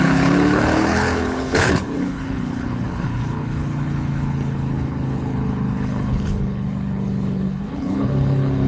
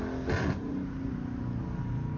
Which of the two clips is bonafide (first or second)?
second